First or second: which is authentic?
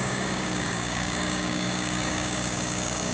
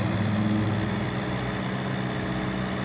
second